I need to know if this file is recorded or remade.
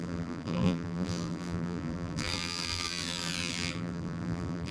remade